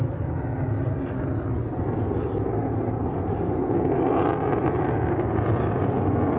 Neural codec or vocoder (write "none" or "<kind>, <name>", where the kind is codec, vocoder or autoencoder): none